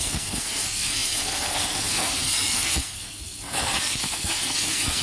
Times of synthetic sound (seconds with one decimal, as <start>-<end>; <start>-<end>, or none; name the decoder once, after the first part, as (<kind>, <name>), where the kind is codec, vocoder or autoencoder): 0.0-5.0 (codec, SNAC)